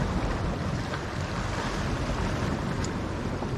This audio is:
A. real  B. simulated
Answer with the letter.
A